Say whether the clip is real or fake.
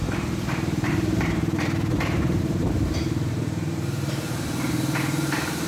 fake